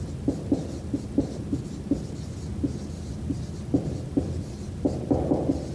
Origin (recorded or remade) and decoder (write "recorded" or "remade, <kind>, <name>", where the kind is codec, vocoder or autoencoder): recorded